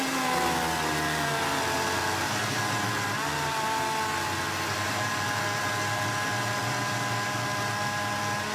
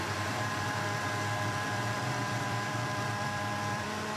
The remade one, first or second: second